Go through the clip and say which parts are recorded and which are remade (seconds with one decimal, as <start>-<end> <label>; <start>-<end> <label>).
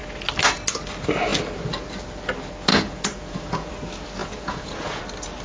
0.0-2.7 recorded; 2.7-3.7 remade; 3.7-4.2 recorded; 4.2-5.0 remade; 5.0-5.4 recorded